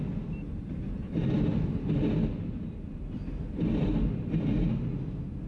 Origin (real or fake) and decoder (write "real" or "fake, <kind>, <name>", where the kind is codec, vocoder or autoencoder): real